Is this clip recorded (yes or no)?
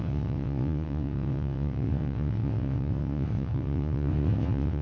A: no